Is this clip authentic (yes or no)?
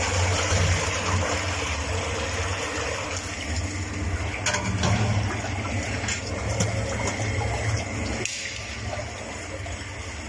yes